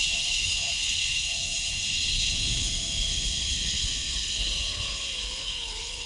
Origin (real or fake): fake